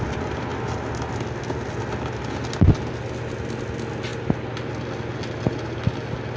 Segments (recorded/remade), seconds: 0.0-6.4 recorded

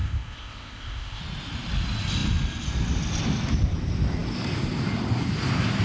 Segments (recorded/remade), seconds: 0.0-1.2 remade; 1.2-5.8 recorded